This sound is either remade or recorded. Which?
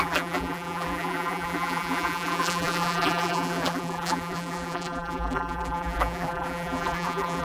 remade